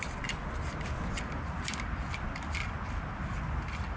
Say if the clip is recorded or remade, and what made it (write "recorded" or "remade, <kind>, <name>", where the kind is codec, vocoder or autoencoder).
recorded